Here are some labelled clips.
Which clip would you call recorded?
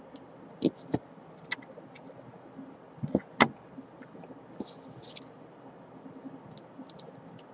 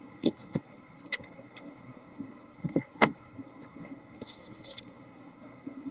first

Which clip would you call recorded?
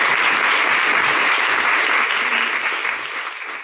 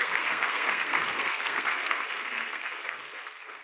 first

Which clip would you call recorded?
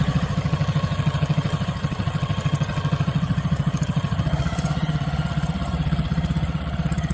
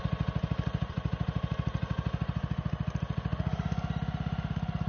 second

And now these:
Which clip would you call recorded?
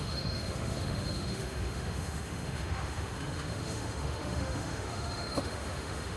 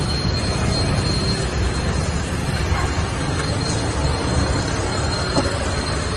second